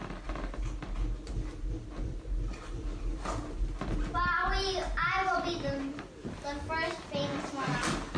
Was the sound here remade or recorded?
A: recorded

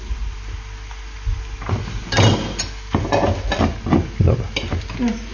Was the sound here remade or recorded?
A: recorded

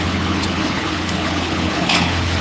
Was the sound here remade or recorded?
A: remade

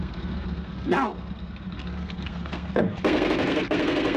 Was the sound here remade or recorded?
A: remade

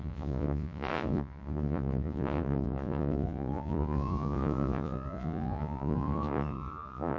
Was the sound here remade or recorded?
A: remade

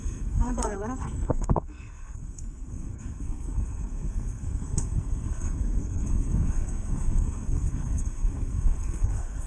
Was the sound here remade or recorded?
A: remade